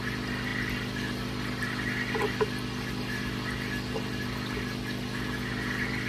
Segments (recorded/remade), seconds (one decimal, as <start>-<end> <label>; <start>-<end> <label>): 0.0-6.1 recorded